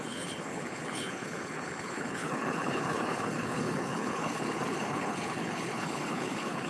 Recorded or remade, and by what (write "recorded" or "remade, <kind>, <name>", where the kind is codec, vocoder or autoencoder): remade, codec, HILCodec